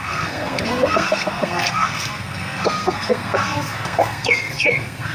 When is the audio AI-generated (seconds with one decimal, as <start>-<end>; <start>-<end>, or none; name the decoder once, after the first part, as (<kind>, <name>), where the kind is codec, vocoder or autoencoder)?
0.0-5.1 (codec, SNAC)